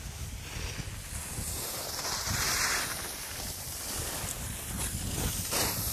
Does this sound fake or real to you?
real